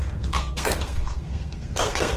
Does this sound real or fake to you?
fake